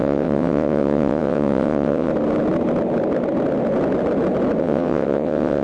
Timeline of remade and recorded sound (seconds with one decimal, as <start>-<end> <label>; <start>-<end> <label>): 0.0-2.1 remade; 2.1-4.6 recorded; 4.6-5.6 remade